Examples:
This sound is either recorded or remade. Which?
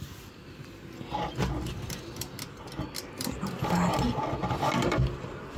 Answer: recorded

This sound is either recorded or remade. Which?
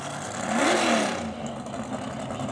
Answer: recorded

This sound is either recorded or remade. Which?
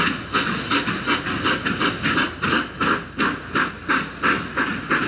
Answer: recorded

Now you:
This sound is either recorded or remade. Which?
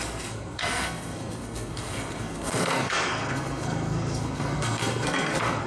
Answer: remade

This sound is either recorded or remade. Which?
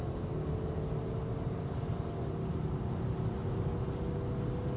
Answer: recorded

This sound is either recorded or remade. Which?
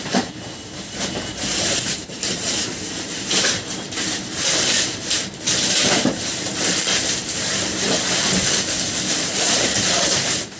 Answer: remade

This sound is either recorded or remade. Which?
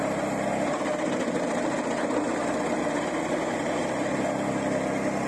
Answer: recorded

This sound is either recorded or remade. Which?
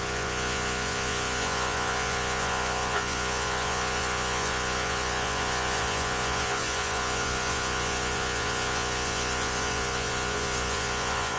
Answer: remade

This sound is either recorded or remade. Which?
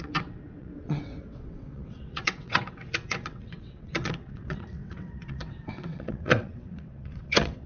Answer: remade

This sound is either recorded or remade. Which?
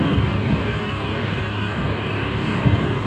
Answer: remade